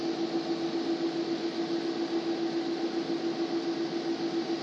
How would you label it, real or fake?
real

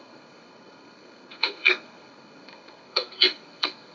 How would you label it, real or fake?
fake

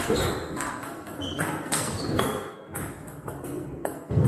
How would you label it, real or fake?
fake